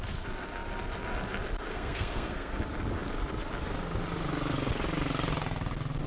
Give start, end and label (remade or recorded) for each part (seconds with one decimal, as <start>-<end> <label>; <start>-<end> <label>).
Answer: 0.0-1.7 recorded; 1.7-2.6 remade; 2.6-6.1 recorded